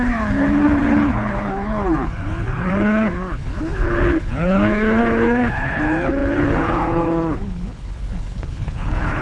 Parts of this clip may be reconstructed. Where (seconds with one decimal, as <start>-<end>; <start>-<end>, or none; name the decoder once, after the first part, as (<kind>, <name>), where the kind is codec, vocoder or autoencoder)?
0.0-9.2 (codec, HILCodec)